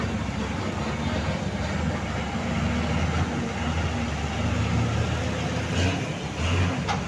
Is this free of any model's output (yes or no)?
yes